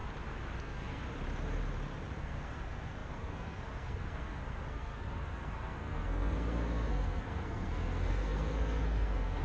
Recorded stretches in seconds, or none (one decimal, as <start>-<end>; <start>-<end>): 0.0-0.6; 1.0-2.2